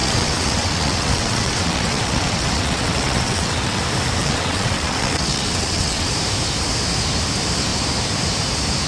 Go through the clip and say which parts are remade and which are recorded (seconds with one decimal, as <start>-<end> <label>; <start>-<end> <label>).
0.0-3.8 remade; 3.8-4.2 recorded; 4.2-6.1 remade; 6.1-8.9 recorded